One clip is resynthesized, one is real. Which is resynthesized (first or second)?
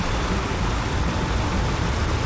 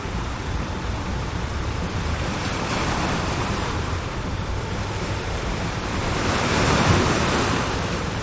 second